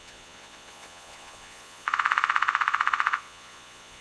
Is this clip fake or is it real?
fake